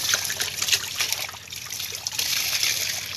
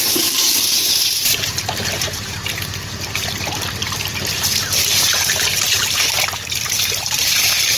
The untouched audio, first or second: first